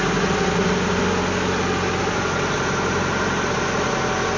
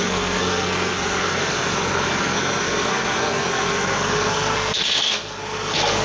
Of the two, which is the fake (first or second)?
second